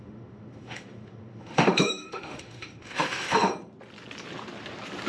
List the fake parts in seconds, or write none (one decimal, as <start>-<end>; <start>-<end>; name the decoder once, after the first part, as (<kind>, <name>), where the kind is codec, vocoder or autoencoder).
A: 0.0-3.5 (autoencoder, DAC-VAE)